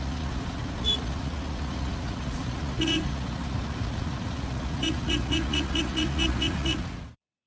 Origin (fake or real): fake